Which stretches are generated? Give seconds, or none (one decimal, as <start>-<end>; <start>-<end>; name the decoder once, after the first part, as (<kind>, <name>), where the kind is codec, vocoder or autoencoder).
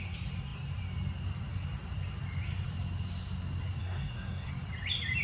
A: 3.8-4.5 (codec, SNAC)